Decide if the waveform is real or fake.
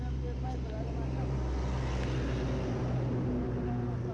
real